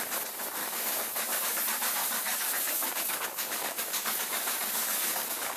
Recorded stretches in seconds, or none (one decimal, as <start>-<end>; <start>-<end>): 0.0-0.6; 1.6-2.0